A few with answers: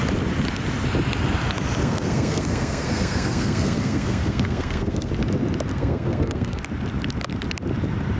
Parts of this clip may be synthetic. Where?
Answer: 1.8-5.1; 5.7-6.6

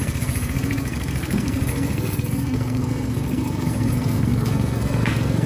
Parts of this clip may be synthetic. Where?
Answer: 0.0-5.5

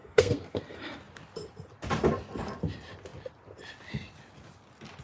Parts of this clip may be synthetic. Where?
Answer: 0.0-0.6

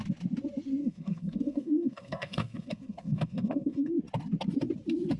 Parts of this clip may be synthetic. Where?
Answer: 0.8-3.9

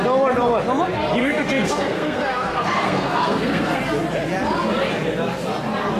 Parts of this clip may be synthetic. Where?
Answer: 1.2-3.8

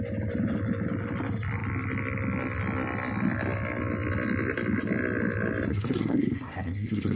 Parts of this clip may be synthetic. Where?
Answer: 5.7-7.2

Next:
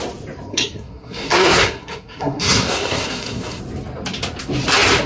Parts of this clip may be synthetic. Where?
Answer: 0.5-3.6